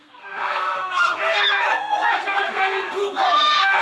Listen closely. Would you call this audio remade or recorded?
remade